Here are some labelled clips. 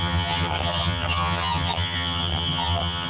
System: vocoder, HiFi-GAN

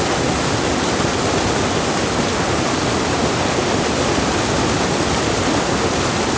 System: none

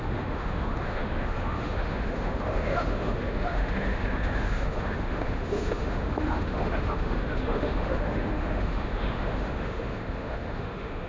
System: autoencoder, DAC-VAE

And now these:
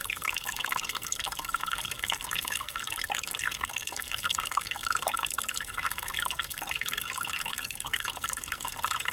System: codec, SNAC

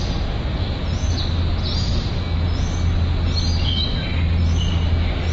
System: none